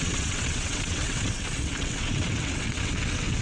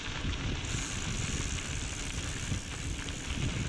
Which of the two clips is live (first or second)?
second